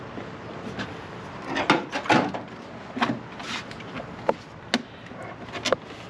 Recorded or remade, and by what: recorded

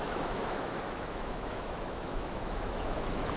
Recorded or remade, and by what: remade, autoencoder, DAC-VAE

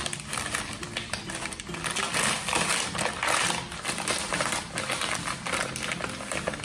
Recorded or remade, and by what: recorded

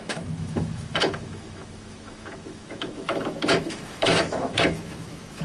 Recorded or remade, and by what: remade, autoencoder, DAC-VAE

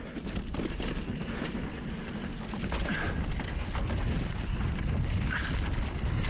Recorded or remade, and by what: recorded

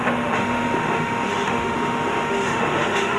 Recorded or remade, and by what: remade, autoencoder, DAC-VAE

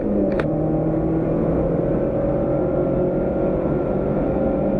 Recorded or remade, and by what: recorded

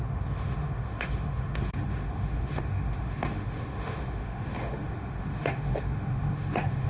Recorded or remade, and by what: remade, autoencoder, DAC-VAE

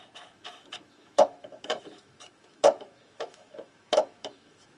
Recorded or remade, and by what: remade, autoencoder, DAC-VAE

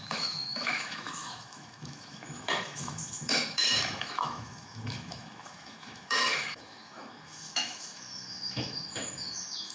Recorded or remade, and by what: remade, autoencoder, DAC-VAE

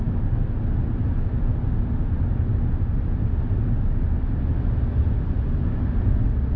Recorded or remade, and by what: recorded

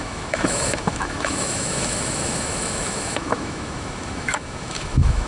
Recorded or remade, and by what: remade, autoencoder, DAC-VAE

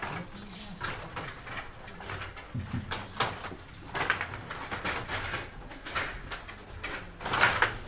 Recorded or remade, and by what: recorded